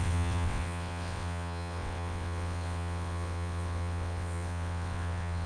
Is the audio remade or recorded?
remade